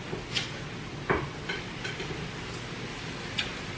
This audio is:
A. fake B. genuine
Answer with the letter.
B